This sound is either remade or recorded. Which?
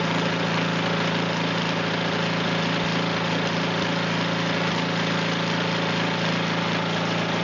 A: recorded